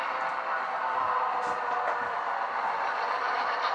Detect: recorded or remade remade